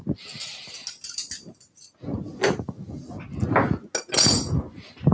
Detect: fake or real real